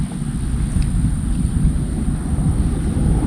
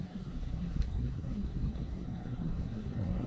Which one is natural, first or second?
first